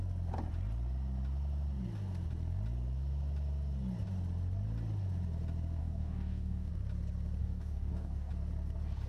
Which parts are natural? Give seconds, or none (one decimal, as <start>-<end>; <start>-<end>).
0.0-5.8; 6.7-7.4; 8.3-9.1